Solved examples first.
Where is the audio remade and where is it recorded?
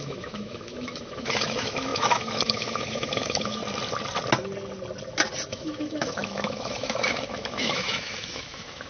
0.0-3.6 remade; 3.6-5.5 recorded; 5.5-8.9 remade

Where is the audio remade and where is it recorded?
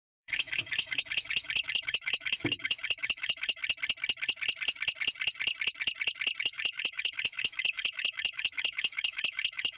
0.0-3.6 remade; 3.6-6.4 recorded; 6.4-9.8 remade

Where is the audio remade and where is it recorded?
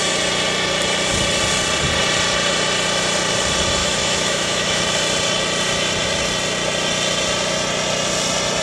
0.0-3.8 recorded; 3.8-4.8 remade; 4.8-8.6 recorded